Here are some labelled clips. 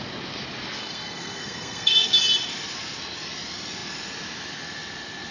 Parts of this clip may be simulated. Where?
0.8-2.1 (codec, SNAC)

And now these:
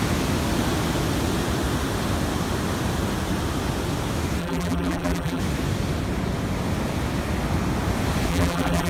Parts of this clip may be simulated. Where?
4.4-5.4 (vocoder, BigVGAN v2); 8.3-8.9

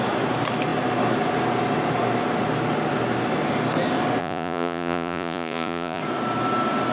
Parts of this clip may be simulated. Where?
4.2-6.0 (vocoder, Vocos)

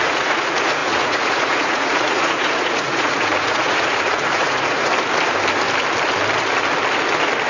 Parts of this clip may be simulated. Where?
0.0-4.9 (vocoder, Vocos)

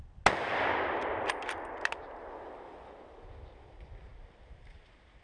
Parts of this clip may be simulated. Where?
none

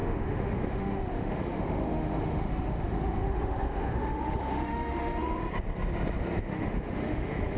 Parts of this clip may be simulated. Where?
0.0-5.4 (autoencoder, DAC-VAE); 6.4-7.6

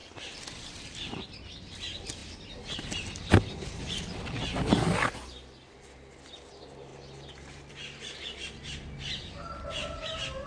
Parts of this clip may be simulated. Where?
none

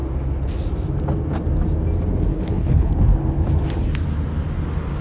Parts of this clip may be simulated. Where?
2.3-2.9 (codec, HILCodec)